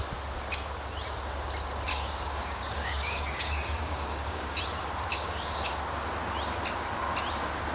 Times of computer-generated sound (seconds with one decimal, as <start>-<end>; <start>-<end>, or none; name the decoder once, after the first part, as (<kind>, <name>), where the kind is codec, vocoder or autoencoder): 1.9-4.6 (codec, DAC); 5.1-5.7